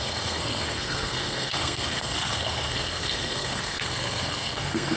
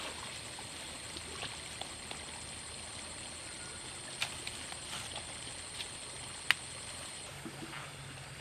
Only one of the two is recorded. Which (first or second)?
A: second